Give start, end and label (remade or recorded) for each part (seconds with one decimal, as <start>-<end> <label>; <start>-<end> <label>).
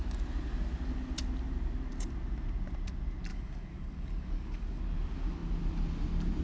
0.0-3.3 recorded; 3.3-4.8 remade; 4.8-6.4 recorded